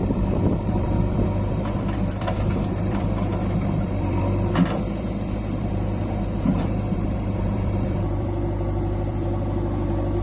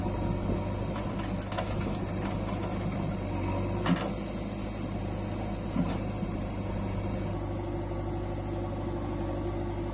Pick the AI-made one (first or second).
first